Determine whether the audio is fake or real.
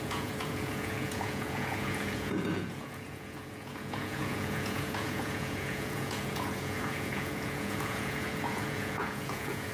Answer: fake